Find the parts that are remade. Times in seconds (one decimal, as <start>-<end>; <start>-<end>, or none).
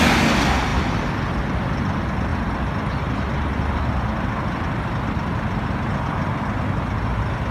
none